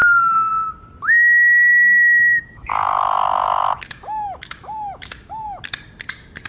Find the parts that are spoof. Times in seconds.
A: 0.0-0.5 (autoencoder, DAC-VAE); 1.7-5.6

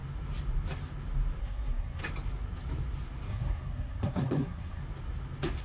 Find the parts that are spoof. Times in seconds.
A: 1.4-2.0 (codec, SNAC); 3.3-4.8

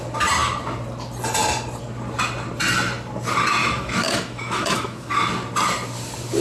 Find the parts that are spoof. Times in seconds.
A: 3.6-5.1 (autoencoder, DAC-VAE)

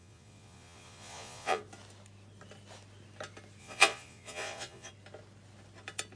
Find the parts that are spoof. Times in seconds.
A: 0.0-1.6 (vocoder, Vocos); 3.6-4.9

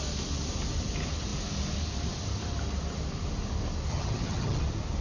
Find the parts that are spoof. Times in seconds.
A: 3.9-4.6 (vocoder, HiFi-GAN)

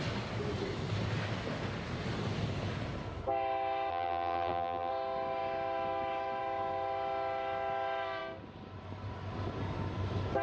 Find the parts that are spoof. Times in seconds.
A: 3.9-4.9 (vocoder, BigVGAN v2)

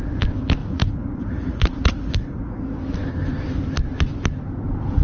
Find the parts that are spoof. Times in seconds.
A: 0.6-2.6 (vocoder, Vocos)